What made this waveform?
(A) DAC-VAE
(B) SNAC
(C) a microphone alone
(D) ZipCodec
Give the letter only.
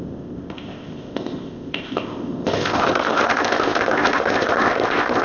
D